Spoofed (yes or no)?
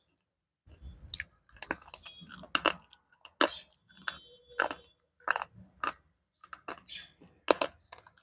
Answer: no